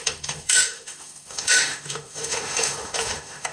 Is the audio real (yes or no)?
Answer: no